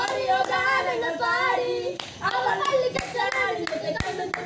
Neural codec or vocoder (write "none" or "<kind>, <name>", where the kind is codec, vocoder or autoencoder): none